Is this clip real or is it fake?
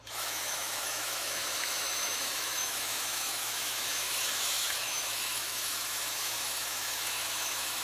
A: fake